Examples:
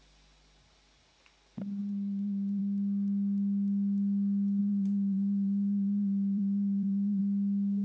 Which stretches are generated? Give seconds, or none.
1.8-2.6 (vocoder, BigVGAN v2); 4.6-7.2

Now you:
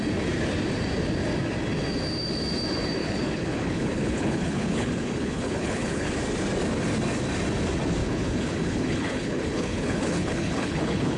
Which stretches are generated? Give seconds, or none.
3.0-6.1 (codec, HILCodec); 8.0-11.2